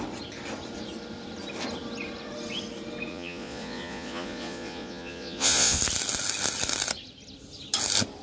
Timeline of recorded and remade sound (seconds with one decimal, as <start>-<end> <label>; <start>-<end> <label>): 0.0-3.1 recorded; 3.1-5.8 remade; 5.8-8.2 recorded